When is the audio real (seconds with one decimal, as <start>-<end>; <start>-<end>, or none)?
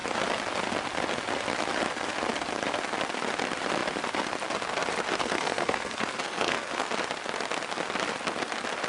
0.0-5.2; 6.9-8.9